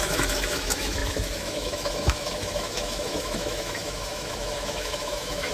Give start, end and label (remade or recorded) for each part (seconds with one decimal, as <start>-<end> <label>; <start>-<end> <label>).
0.0-5.5 remade